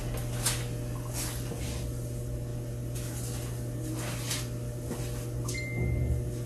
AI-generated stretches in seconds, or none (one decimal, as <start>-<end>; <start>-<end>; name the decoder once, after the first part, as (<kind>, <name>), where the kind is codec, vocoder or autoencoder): none